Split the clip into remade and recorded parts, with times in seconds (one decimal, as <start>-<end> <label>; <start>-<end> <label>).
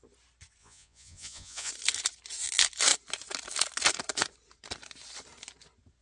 0.0-0.6 recorded; 0.6-1.7 remade; 1.7-6.0 recorded